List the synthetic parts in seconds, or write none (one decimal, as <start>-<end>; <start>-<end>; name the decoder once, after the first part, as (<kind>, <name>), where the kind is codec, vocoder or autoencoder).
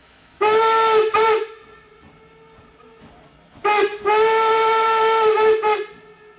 0.0-0.6 (autoencoder, DAC-VAE)